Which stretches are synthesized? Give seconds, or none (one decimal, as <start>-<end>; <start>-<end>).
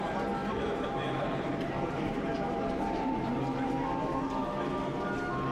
0.4-3.7